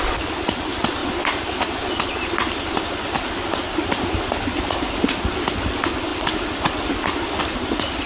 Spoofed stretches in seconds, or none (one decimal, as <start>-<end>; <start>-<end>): none